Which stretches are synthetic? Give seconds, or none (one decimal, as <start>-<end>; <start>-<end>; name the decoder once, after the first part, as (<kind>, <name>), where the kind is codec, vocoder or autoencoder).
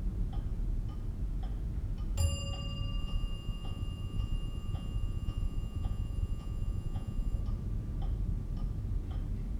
3.0-7.4 (vocoder, Vocos)